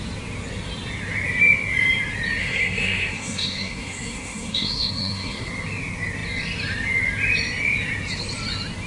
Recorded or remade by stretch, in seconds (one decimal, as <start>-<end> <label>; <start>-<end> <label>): 0.0-2.4 recorded; 2.4-5.5 remade; 5.5-8.9 recorded